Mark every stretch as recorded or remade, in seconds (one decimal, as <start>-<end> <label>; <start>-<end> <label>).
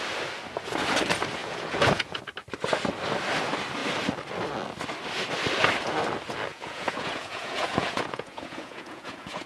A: 0.0-1.4 recorded; 1.4-2.2 remade; 2.2-6.5 recorded; 6.5-9.5 remade